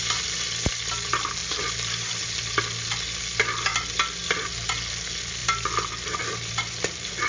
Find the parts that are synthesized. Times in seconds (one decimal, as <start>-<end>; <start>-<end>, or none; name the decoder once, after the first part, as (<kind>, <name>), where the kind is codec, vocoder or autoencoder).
none